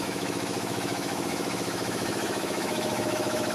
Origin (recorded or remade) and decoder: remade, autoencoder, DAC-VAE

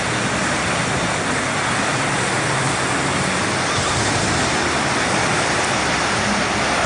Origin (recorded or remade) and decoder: recorded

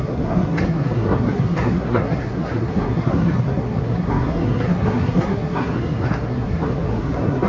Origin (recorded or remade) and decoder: remade, codec, SNAC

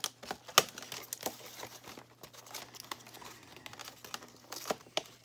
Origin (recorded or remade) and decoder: recorded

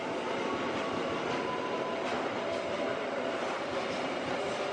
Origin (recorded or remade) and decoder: recorded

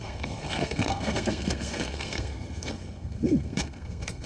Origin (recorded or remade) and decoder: remade, codec, SNAC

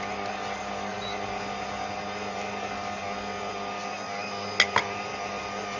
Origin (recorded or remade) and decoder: recorded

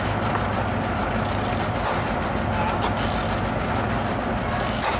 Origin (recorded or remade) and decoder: recorded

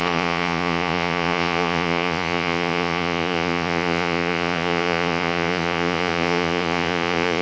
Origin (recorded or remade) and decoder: remade, vocoder, Vocos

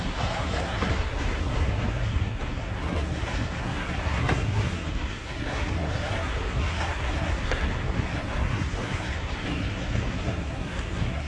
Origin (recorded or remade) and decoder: remade, codec, SNAC